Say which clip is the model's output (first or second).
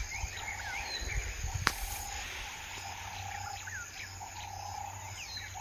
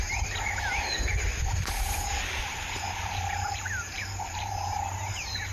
second